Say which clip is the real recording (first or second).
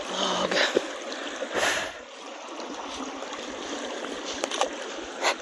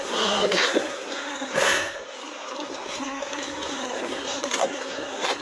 first